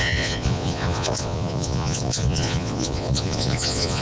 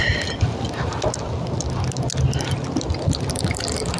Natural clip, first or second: second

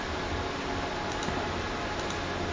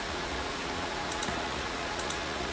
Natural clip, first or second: first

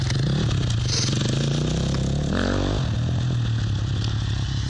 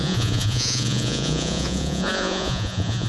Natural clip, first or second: first